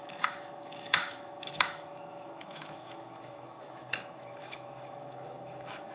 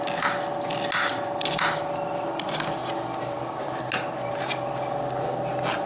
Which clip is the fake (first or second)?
first